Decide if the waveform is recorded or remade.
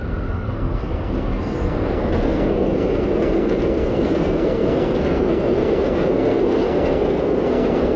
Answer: remade